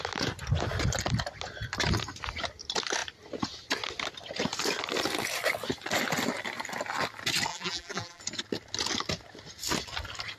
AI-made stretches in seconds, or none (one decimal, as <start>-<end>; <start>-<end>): 7.5-8.2